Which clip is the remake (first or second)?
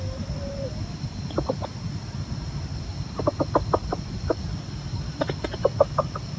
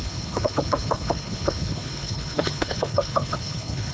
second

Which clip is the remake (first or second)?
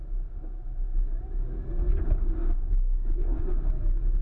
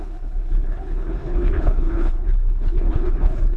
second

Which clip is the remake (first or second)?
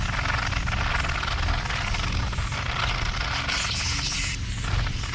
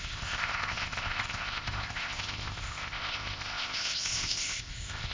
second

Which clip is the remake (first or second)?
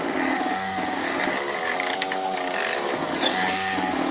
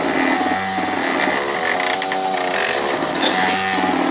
first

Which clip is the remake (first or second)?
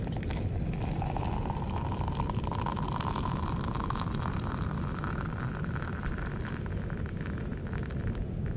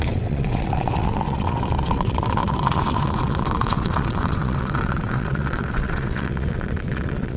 second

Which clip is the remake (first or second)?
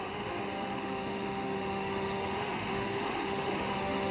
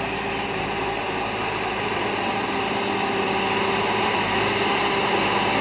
first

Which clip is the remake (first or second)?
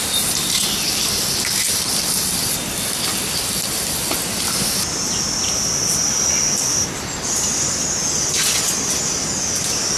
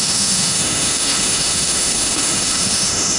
second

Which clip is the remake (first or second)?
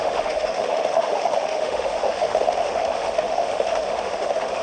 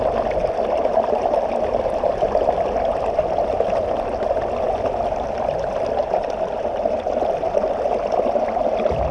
first